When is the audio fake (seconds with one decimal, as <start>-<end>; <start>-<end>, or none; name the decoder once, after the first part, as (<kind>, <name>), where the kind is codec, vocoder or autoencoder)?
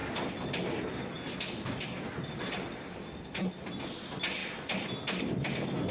none